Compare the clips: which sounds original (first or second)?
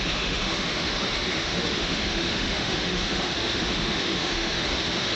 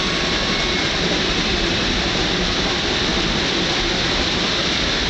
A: second